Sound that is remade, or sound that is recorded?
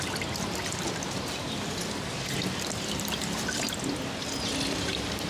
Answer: recorded